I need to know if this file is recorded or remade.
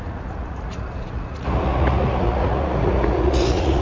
remade